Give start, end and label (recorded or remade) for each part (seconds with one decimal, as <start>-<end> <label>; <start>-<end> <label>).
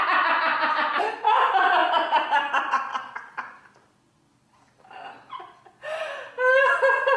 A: 0.0-7.2 recorded